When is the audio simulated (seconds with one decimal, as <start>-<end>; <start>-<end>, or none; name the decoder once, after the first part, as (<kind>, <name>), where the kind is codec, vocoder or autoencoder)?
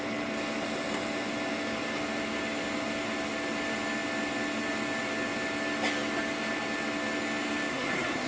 7.7-8.3 (codec, SNAC)